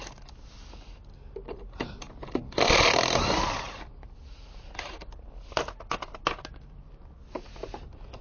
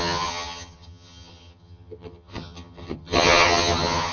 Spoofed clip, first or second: second